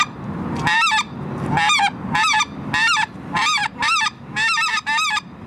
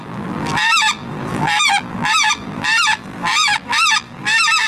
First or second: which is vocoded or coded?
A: second